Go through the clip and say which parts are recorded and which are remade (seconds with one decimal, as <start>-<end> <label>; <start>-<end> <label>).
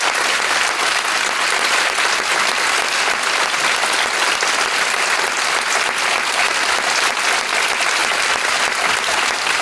0.0-9.6 recorded